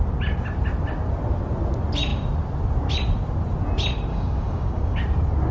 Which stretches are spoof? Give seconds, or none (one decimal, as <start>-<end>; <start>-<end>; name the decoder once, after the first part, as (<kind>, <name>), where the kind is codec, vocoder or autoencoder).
4.1-5.0 (codec, DAC)